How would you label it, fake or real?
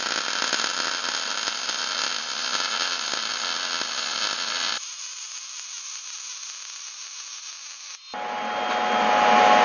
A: real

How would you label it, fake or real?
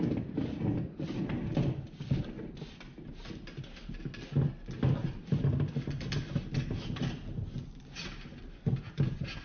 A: real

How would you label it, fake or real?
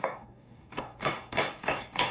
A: fake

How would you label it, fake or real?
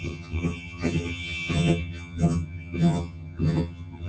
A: fake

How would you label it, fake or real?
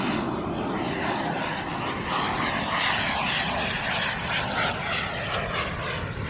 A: real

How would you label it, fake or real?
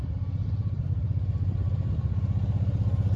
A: real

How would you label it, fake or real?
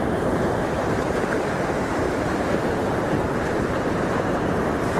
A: fake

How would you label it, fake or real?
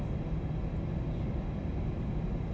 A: real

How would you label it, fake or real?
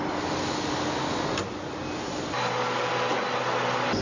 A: real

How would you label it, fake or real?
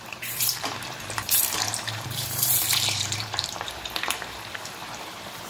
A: fake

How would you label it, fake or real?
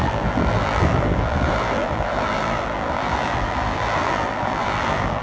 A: fake